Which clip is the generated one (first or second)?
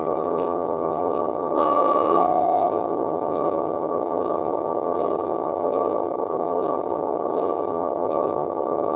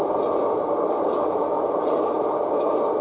first